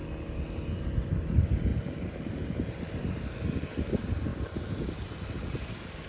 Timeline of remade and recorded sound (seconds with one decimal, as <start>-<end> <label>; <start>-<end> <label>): 0.0-1.7 recorded; 1.7-2.7 remade; 2.7-6.1 recorded